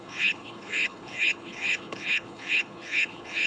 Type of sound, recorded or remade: remade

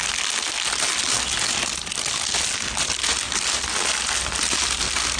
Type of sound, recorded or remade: recorded